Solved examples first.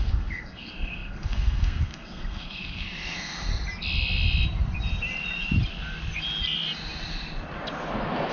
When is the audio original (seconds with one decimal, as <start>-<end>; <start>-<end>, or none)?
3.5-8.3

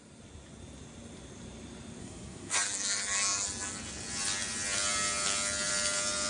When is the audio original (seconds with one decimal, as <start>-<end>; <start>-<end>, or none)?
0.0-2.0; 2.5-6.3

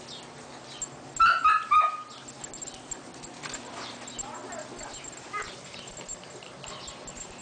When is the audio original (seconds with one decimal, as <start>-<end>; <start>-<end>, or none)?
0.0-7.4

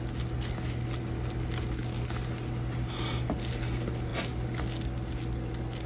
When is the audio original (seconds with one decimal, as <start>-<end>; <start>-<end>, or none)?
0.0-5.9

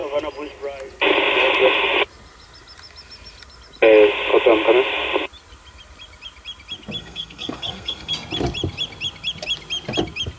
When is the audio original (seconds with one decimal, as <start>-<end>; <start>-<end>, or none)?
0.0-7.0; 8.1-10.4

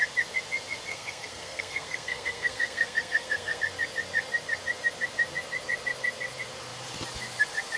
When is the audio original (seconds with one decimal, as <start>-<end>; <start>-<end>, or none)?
0.0-0.9; 3.6-7.8

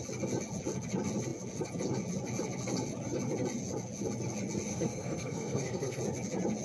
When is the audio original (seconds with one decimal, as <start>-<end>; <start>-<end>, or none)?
0.0-4.7; 6.0-6.6